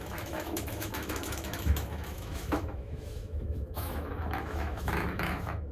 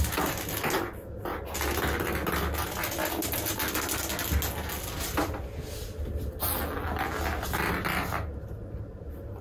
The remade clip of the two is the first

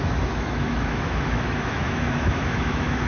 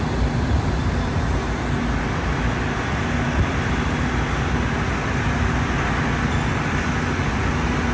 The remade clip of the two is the first